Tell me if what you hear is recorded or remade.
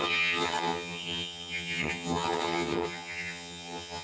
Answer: remade